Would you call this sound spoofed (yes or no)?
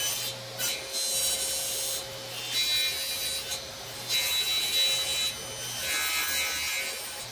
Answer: no